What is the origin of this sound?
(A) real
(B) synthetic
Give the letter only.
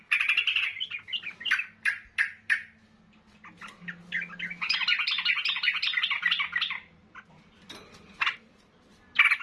A